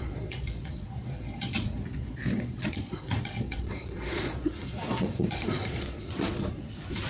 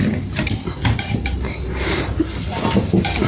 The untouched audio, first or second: second